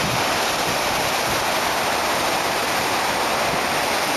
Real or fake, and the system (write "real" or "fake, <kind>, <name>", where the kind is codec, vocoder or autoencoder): real